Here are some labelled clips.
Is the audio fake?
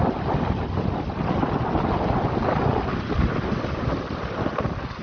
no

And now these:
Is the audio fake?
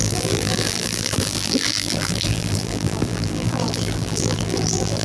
yes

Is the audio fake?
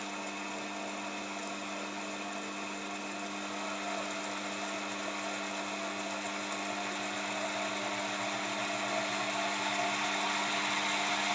no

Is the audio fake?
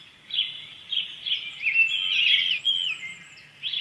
no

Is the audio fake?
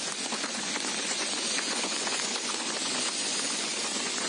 yes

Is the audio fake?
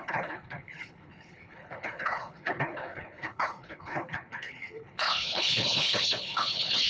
yes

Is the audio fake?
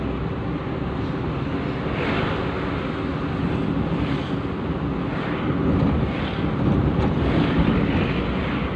no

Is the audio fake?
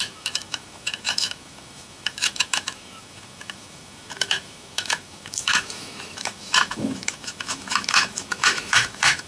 yes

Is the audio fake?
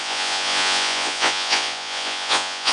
yes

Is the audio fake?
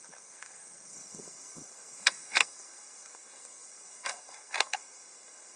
yes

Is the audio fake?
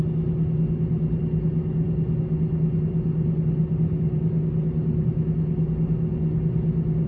no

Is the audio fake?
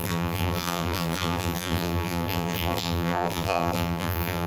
yes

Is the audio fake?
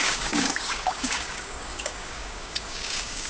yes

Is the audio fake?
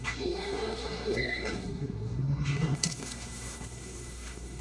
yes